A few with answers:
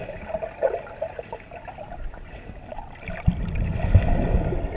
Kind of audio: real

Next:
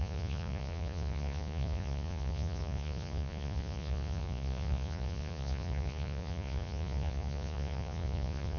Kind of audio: fake